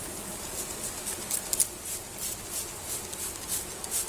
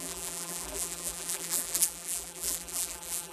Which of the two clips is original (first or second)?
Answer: first